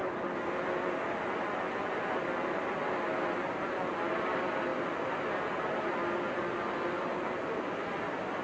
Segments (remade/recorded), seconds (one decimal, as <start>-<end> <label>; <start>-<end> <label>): 0.0-8.4 recorded